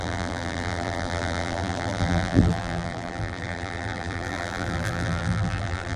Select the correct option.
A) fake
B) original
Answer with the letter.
A